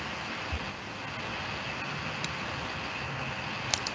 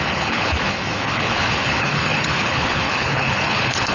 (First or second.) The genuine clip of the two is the first